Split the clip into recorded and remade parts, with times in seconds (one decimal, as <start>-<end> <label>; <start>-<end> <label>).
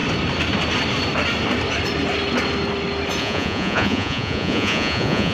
0.0-3.2 recorded; 3.2-5.3 remade